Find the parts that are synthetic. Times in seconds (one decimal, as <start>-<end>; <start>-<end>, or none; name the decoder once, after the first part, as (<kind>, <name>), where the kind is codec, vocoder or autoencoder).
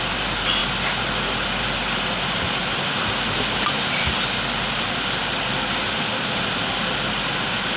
none